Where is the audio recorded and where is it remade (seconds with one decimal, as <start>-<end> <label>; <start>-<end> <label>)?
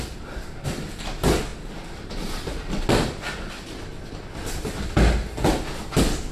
0.0-6.3 recorded